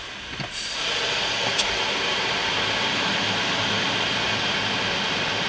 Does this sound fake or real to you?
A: real